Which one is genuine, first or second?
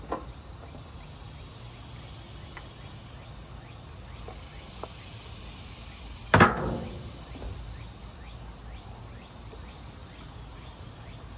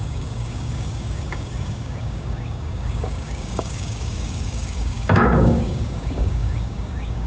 first